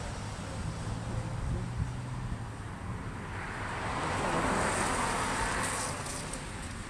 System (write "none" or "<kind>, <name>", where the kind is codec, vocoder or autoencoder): none